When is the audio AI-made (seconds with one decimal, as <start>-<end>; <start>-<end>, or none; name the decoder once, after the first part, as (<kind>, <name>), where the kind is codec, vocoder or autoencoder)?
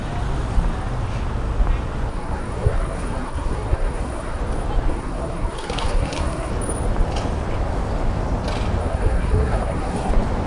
2.1-4.4 (codec, SNAC); 4.9-6.5; 8.8-10.1